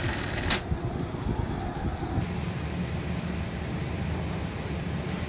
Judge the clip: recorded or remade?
recorded